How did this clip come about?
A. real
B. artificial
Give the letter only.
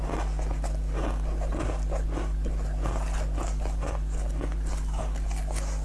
A